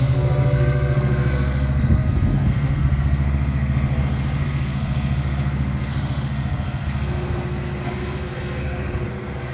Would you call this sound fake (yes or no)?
yes